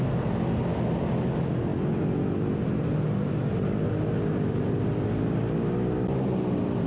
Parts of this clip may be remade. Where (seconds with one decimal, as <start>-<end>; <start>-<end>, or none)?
none